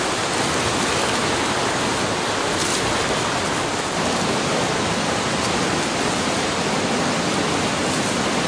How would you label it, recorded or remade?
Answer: recorded